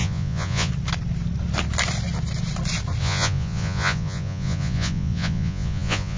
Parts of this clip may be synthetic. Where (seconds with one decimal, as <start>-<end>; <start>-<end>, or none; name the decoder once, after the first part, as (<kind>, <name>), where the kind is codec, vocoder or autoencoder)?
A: 0.0-0.7 (vocoder, Vocos); 3.0-6.2